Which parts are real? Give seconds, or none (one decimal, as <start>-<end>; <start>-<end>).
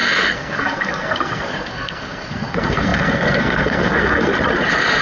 4.3-5.0